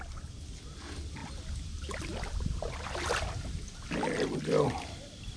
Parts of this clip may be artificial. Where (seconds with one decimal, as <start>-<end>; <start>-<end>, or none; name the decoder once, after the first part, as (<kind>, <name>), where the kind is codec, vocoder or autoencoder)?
none